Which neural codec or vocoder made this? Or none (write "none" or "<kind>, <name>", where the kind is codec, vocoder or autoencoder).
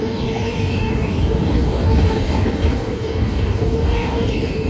codec, DAC